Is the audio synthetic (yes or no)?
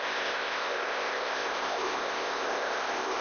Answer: yes